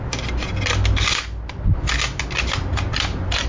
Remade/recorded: recorded